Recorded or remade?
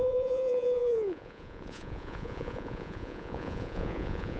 remade